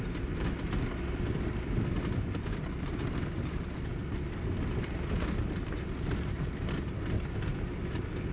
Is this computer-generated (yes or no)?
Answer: no